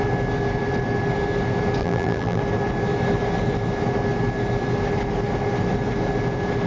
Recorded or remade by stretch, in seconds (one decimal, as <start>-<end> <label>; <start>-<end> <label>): 0.0-1.8 recorded; 1.8-2.4 remade; 2.4-6.7 recorded